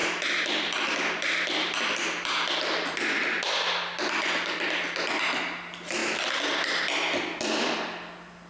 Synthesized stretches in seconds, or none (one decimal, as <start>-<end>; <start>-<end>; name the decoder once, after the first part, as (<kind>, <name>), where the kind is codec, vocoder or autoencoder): none